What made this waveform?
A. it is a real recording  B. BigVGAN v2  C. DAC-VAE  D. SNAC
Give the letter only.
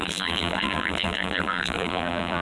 B